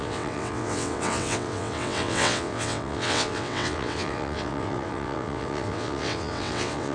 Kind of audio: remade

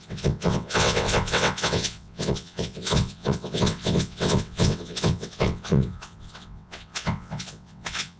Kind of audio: remade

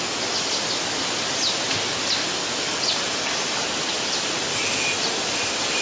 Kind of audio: recorded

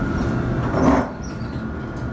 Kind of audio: recorded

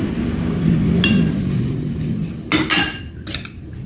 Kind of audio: recorded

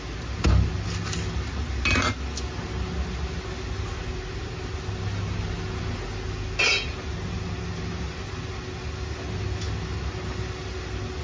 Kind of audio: recorded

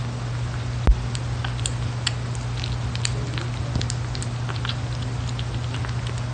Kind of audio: recorded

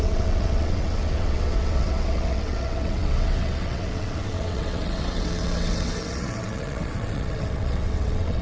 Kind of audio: remade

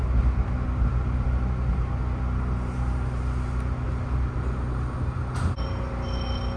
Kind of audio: recorded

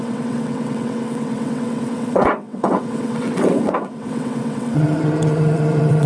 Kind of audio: remade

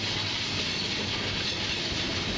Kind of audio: recorded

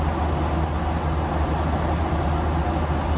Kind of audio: recorded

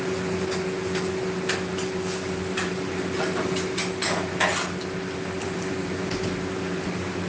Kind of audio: recorded